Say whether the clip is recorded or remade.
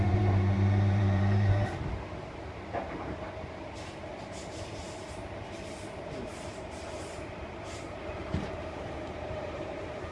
remade